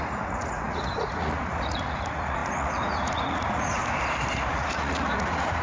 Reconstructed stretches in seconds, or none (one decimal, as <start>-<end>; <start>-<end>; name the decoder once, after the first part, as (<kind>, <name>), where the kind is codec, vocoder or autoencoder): 0.0-3.8 (vocoder, Vocos); 4.5-5.6